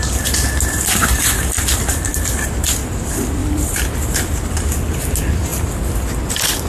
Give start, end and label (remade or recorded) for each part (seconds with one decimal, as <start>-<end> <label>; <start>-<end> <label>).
0.0-1.0 recorded; 1.0-2.4 remade; 2.4-3.4 recorded; 3.4-4.6 remade; 4.6-6.7 recorded